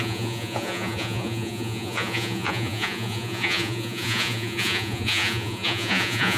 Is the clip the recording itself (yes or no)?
no